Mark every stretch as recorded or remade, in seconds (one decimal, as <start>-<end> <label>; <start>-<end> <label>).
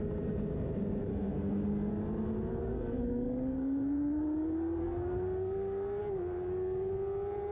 0.0-1.1 recorded; 1.1-1.9 remade; 1.9-2.6 recorded; 2.6-4.2 remade; 4.2-4.8 recorded; 4.8-6.0 remade; 6.0-7.5 recorded